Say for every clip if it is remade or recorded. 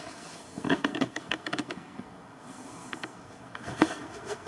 remade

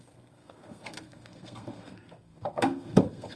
remade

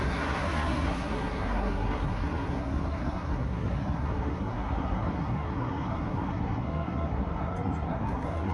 remade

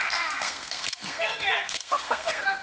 remade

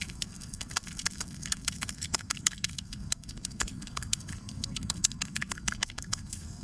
remade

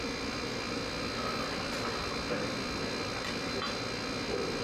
recorded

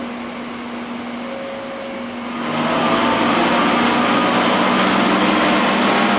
recorded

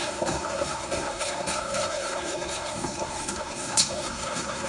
remade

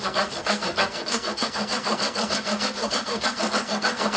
remade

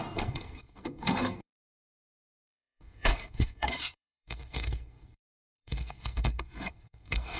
remade